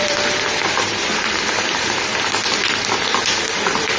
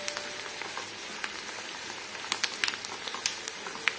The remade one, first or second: first